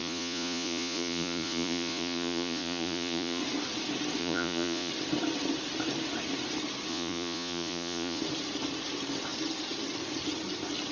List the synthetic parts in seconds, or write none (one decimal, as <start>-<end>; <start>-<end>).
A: 0.0-3.4; 4.2-4.9; 6.9-8.2